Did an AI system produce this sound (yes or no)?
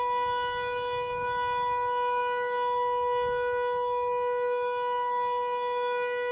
no